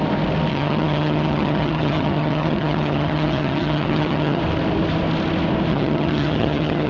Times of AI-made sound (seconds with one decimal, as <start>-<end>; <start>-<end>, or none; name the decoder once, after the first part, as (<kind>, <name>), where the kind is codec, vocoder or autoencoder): 0.5-4.4 (vocoder, HiFi-GAN); 5.7-6.9